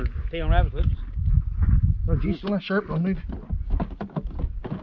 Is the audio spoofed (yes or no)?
no